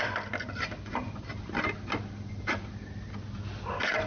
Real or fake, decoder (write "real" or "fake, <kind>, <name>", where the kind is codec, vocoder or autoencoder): real